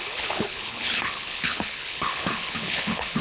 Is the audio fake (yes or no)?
yes